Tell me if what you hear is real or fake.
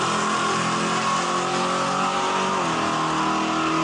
real